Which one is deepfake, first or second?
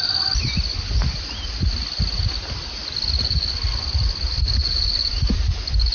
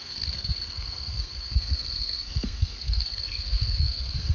second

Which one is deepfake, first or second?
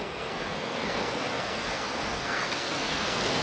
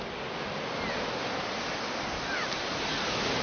first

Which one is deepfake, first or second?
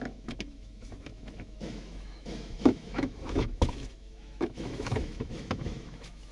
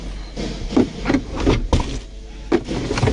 first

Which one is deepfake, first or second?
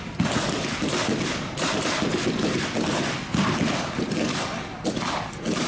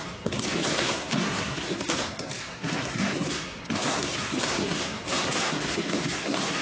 second